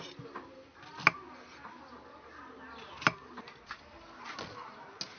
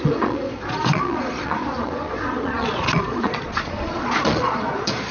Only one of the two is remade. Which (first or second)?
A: second